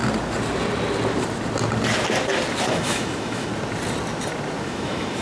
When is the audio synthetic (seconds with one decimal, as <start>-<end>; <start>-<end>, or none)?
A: 2.7-3.5; 4.6-5.2

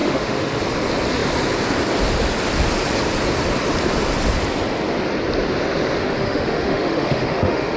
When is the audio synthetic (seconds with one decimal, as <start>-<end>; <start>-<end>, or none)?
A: 0.0-0.6; 6.0-7.8

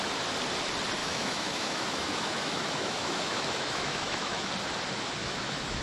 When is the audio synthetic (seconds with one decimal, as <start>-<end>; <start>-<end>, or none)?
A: 1.0-4.5; 5.2-5.8

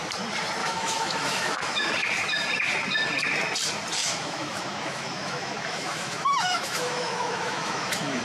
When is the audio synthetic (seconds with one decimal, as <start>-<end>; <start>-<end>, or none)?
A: 0.6-1.9; 4.0-8.2

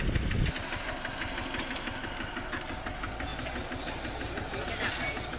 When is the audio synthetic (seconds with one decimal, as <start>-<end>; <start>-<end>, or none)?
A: none